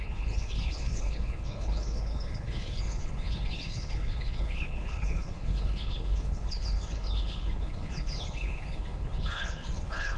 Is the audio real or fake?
fake